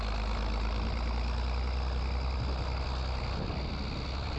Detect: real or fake real